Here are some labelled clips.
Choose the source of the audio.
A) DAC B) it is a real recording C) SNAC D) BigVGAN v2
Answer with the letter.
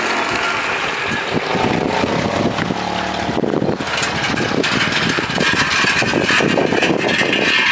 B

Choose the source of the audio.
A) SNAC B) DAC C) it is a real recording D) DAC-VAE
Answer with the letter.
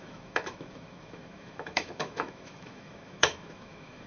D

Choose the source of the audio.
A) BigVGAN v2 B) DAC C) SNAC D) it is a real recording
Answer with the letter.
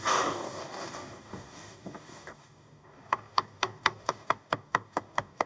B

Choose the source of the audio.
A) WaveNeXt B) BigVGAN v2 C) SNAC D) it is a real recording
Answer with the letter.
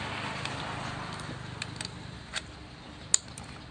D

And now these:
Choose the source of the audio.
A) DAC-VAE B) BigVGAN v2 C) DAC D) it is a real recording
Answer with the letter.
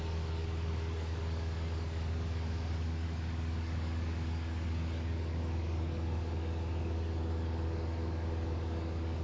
C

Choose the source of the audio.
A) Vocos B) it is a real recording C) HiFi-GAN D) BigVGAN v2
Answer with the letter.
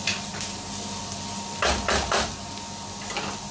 B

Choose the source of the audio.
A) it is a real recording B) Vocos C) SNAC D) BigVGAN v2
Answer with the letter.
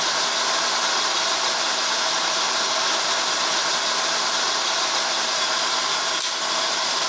A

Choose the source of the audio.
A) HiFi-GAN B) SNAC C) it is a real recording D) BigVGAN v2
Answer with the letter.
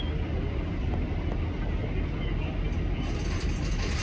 C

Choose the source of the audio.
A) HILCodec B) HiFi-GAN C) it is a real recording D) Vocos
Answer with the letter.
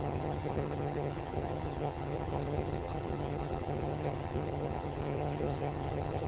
B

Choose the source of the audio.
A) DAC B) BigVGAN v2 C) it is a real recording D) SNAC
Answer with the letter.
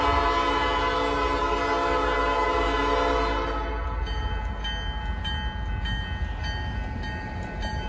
C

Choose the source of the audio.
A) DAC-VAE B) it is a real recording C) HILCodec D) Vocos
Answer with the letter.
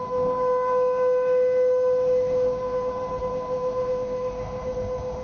A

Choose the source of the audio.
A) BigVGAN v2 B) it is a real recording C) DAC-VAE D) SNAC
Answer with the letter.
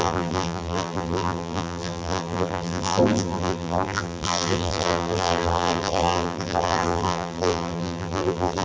A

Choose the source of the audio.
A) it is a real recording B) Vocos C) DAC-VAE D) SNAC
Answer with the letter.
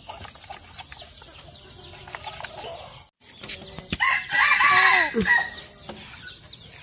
A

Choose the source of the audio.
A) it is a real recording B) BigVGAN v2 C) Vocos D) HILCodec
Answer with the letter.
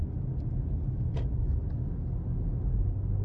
A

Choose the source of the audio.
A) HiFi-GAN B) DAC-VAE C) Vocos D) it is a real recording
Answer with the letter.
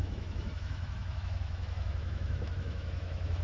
B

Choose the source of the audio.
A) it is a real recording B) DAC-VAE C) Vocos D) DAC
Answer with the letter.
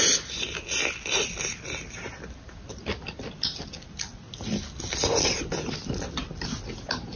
A